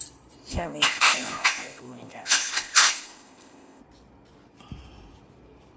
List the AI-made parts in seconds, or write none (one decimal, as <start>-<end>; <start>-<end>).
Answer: 0.5-3.8